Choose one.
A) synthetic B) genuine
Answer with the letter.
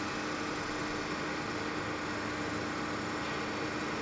B